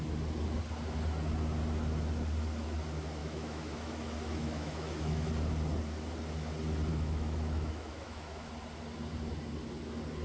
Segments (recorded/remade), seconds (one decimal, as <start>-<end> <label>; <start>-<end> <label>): 0.0-3.2 recorded; 3.2-5.3 remade; 5.3-6.9 recorded; 6.9-8.5 remade; 8.5-10.2 recorded